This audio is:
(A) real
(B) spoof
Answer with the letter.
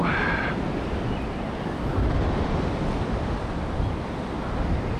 A